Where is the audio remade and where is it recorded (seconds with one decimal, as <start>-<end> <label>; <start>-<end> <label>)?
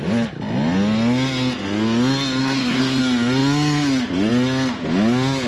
0.0-2.4 recorded; 2.4-3.0 remade; 3.0-5.5 recorded